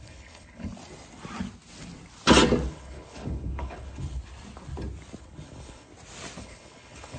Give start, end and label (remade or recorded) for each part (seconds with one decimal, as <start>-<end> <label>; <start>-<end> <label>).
0.0-0.7 remade; 0.7-2.7 recorded; 2.7-4.2 remade; 4.2-5.2 recorded; 5.2-5.9 remade; 5.9-6.4 recorded; 6.4-7.2 remade